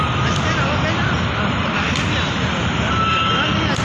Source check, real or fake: real